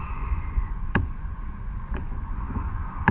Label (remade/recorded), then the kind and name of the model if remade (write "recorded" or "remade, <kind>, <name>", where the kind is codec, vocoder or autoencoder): remade, vocoder, Vocos